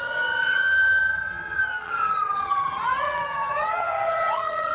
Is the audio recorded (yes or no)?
no